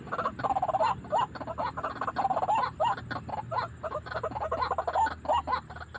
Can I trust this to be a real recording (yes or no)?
yes